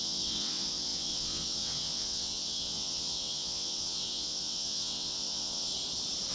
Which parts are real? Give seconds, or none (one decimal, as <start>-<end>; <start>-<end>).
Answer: 5.7-6.3